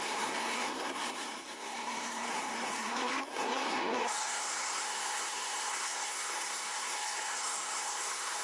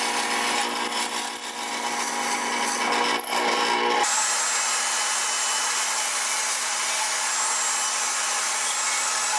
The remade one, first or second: first